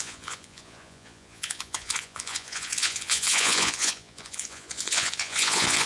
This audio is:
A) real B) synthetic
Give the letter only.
B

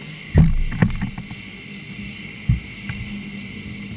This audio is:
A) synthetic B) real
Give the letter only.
B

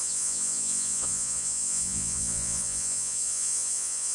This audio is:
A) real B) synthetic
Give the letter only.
B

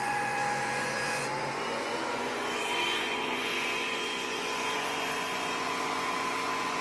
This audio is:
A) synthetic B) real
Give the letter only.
A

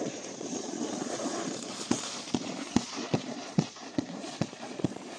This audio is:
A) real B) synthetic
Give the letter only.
B